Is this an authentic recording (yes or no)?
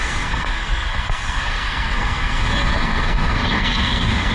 no